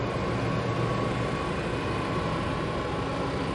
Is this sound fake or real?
real